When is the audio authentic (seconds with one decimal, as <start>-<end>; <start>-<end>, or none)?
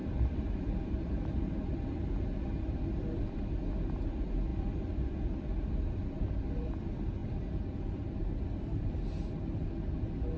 2.1-4.5; 5.8-7.2; 9.0-10.4